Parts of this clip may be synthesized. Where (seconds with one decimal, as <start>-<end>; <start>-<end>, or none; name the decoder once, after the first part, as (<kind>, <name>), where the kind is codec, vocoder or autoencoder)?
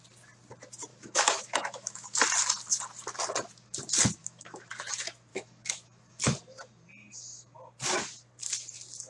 0.9-2.2 (autoencoder, DAC-VAE); 4.2-4.7; 5.3-6.2